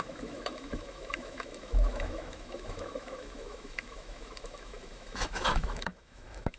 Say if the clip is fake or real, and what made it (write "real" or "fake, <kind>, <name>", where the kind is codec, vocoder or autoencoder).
fake, autoencoder, DAC-VAE